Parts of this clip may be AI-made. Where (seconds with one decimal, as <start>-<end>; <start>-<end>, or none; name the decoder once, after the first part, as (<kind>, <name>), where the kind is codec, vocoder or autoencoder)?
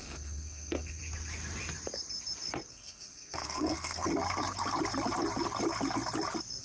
0.0-1.0 (codec, SNAC); 2.7-4.1